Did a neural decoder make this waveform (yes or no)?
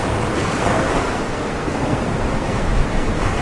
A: yes